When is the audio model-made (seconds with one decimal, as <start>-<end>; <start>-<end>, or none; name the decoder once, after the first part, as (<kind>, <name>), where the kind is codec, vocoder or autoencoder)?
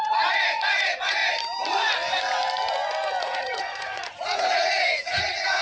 0.0-1.2 (vocoder, Vocos); 3.2-5.6